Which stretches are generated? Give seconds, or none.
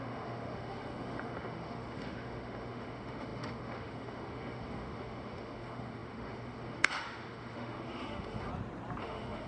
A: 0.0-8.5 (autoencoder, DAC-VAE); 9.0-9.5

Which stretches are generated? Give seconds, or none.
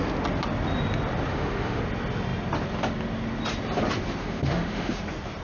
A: 1.3-1.8 (autoencoder, DAC-VAE); 4.2-5.0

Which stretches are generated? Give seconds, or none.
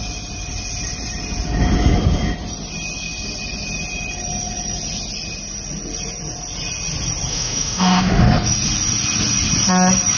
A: 7.3-8.2 (autoencoder, DAC-VAE)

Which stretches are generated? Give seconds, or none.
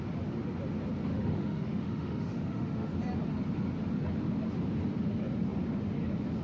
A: 1.1-2.9 (autoencoder, DAC-VAE)